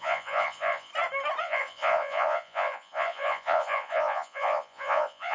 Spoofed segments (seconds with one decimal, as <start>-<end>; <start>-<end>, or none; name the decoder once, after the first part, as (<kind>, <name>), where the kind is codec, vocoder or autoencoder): 0.0-0.9 (vocoder, Vocos); 1.4-5.3

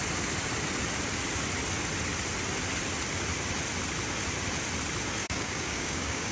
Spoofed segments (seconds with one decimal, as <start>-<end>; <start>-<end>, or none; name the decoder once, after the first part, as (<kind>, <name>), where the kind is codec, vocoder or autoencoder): 5.2-6.3 (codec, DAC)

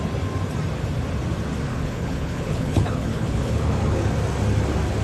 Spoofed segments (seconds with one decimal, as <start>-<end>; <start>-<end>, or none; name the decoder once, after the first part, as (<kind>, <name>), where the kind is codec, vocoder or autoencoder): 1.7-4.1 (codec, HILCodec)

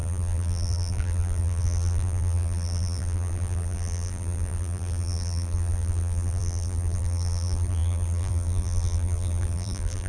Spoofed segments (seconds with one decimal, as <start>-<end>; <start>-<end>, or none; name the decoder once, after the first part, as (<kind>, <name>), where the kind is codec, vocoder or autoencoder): 0.0-10.1 (vocoder, BigVGAN v2)

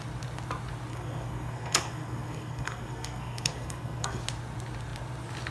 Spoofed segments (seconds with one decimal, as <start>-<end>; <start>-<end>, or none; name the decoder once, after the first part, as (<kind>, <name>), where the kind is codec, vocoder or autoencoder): 0.9-4.2 (codec, SNAC)

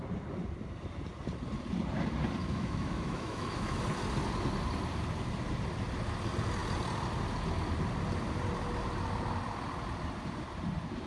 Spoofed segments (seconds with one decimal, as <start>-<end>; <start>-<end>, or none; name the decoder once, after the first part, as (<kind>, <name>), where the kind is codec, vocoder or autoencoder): 2.4-3.8 (autoencoder, DAC-VAE)

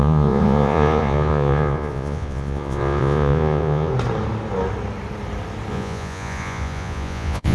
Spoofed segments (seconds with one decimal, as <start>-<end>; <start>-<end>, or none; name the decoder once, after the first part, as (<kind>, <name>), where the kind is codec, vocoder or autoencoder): 0.0-3.9 (vocoder, Vocos); 5.7-7.5